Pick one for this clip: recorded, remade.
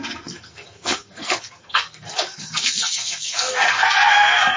remade